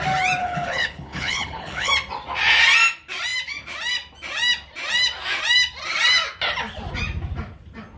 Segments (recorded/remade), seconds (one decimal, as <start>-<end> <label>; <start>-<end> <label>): 0.0-0.4 recorded; 0.4-1.9 remade; 1.9-8.0 recorded